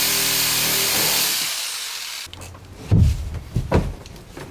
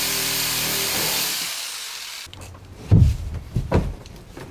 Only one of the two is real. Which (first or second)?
first